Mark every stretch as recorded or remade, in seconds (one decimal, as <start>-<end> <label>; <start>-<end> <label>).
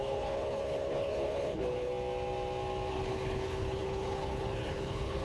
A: 0.0-1.9 remade; 1.9-2.9 recorded; 2.9-5.2 remade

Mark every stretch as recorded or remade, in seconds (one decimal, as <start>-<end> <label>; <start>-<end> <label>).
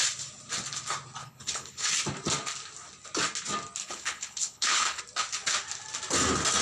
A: 0.0-1.2 recorded; 1.2-1.9 remade; 1.9-3.8 recorded; 3.8-5.0 remade; 5.0-6.6 recorded